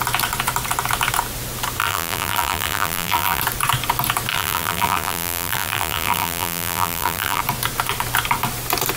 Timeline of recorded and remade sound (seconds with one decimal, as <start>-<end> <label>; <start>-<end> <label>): 0.0-1.8 recorded; 1.8-3.4 remade; 3.4-4.3 recorded; 4.3-7.4 remade; 7.4-9.0 recorded